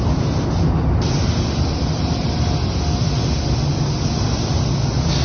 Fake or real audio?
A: real